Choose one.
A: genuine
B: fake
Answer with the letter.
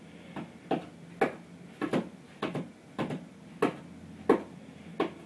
A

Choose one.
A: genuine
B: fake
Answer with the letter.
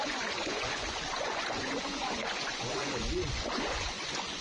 B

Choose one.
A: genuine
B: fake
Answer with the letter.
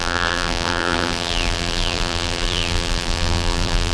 B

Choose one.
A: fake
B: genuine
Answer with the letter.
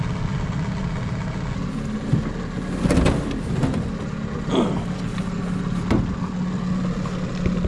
B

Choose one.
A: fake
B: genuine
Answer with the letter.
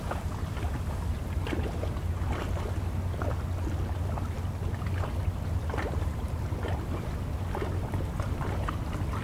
B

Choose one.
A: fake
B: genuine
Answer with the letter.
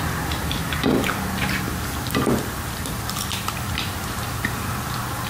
A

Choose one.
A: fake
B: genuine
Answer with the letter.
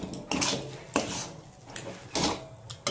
B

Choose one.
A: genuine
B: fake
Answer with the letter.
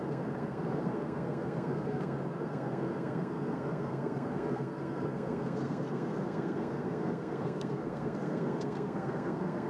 B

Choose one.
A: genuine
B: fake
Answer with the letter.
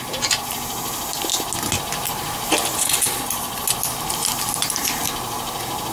A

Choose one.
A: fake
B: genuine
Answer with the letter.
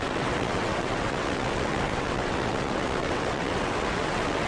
A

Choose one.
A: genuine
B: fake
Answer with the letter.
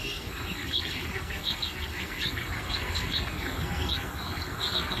B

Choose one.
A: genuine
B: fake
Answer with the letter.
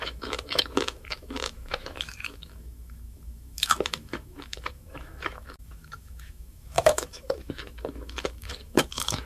B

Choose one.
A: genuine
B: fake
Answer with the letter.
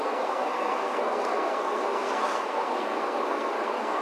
B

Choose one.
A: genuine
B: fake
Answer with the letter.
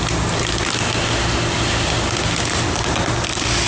A